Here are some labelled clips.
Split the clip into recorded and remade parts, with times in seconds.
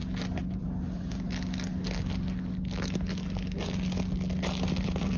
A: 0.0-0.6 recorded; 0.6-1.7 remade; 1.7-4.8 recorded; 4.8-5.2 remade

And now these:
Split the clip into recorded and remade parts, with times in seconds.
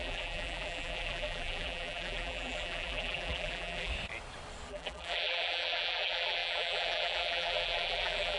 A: 0.0-3.9 remade; 3.9-4.7 recorded; 4.7-8.4 remade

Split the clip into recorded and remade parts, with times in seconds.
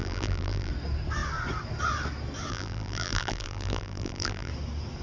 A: 0.0-0.7 remade; 0.7-2.5 recorded; 2.5-4.5 remade; 4.5-5.0 recorded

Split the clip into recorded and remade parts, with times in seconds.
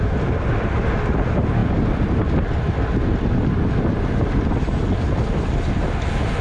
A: 0.0-6.4 recorded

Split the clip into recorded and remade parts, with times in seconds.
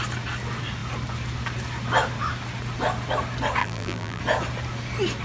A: 0.0-3.6 recorded; 3.6-4.2 remade; 4.2-5.2 recorded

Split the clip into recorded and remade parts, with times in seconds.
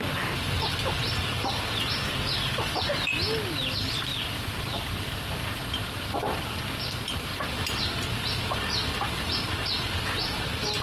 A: 0.0-4.1 recorded; 4.1-5.2 remade; 5.2-10.8 recorded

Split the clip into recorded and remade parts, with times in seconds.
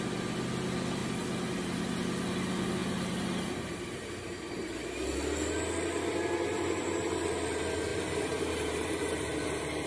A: 0.0-2.8 recorded; 2.8-4.5 remade; 4.5-7.9 recorded; 7.9-9.9 remade